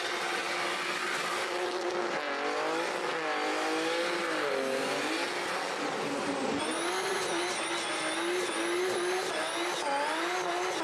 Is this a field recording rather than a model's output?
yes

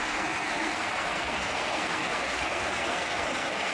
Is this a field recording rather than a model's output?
no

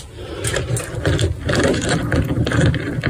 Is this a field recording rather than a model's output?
yes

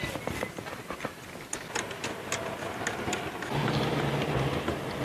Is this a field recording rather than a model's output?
yes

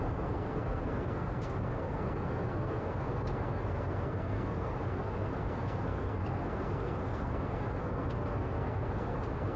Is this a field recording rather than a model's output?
no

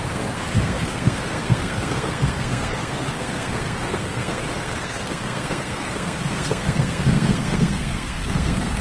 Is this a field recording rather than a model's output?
no